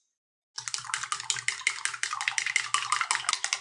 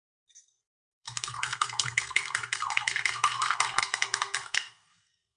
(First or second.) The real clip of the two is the first